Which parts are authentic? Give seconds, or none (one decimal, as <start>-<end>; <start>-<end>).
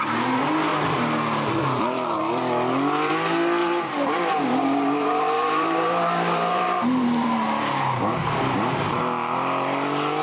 0.0-3.6; 8.8-10.2